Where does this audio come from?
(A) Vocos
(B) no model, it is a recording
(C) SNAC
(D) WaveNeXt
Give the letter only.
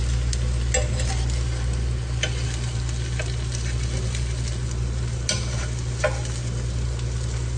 B